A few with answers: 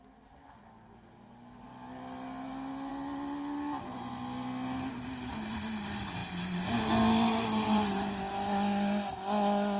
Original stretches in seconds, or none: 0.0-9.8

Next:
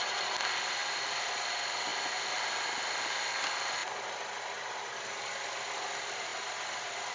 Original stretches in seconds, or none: 0.0-7.1

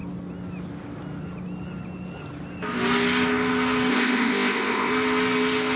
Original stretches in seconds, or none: 0.0-3.9; 4.9-5.8